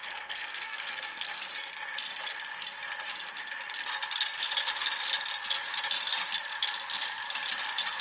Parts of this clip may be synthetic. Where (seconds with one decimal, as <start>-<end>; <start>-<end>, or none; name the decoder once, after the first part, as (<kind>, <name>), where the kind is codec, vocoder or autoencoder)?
0.0-1.4 (codec, SNAC)